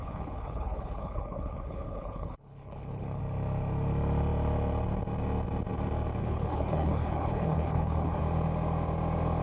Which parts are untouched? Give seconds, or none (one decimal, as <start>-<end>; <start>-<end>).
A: 3.2-6.2; 8.2-9.4